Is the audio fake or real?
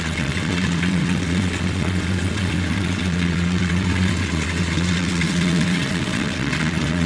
fake